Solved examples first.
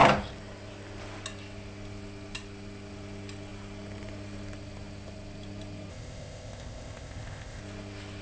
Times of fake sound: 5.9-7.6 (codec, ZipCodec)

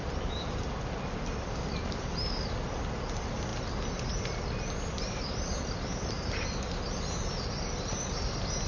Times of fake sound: none